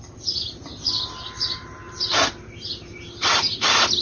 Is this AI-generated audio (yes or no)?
no